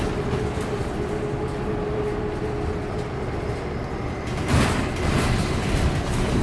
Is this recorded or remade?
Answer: recorded